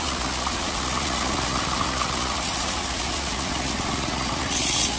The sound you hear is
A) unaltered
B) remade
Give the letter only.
B